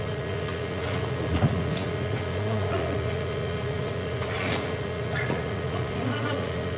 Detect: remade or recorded remade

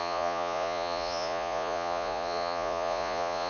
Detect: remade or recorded remade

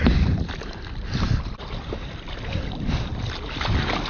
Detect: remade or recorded recorded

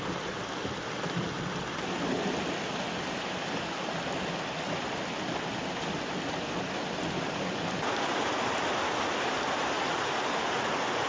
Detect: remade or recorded recorded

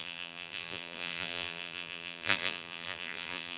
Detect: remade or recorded remade